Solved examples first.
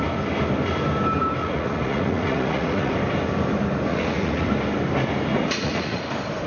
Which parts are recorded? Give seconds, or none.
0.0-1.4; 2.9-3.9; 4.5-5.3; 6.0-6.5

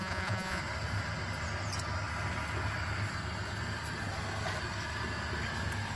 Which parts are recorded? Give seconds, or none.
0.6-6.0

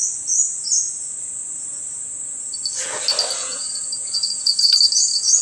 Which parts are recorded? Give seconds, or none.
0.0-3.4; 4.7-5.4